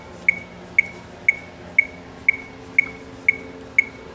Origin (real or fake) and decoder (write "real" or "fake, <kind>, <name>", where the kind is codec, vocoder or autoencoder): real